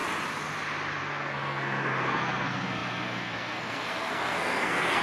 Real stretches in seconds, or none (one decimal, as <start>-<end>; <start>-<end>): 0.0-1.0